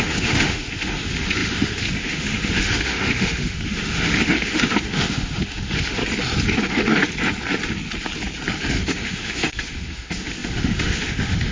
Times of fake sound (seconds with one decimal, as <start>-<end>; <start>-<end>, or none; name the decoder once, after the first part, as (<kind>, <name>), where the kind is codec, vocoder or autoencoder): 0.0-6.0 (autoencoder, DAC-VAE); 8.7-11.5